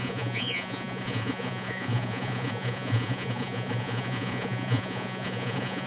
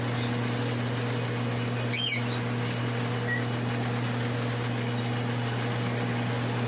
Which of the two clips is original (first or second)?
second